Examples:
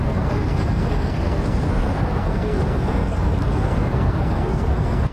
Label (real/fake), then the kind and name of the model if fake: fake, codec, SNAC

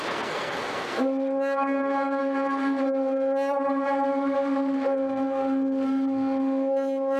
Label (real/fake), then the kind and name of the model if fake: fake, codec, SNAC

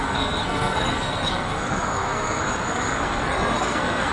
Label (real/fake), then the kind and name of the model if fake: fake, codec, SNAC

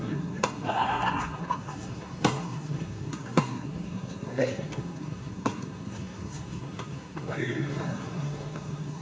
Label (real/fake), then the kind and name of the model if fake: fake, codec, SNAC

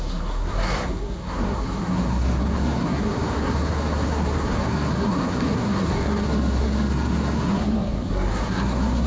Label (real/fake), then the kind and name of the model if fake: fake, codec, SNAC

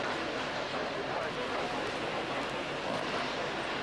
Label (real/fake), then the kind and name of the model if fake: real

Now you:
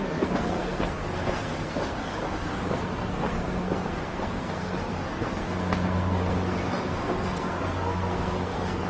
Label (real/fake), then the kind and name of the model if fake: fake, codec, SNAC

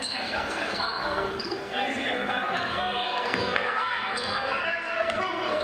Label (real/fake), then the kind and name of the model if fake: fake, codec, SNAC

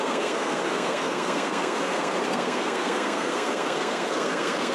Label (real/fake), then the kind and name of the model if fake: fake, codec, SNAC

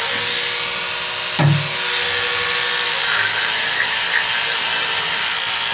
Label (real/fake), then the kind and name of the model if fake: real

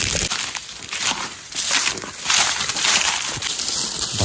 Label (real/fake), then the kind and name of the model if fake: real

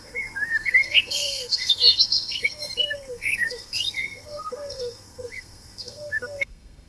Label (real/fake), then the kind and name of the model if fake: fake, codec, SNAC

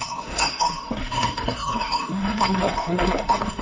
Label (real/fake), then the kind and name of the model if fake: fake, codec, SNAC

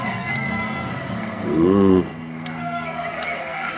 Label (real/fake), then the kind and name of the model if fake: fake, codec, SNAC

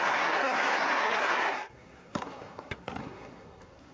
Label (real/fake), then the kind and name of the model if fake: fake, codec, SNAC